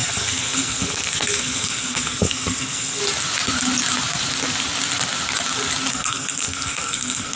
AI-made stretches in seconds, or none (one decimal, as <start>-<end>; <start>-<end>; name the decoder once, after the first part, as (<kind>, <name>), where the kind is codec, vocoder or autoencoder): 0.0-3.0 (codec, SNAC); 5.9-7.4